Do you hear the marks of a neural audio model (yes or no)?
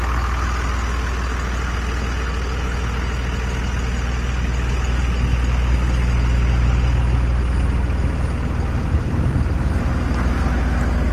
no